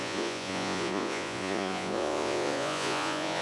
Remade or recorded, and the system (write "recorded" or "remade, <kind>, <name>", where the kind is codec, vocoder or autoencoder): remade, vocoder, Vocos